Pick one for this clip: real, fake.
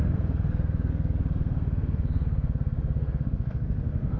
fake